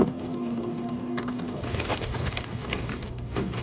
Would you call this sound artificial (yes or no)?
yes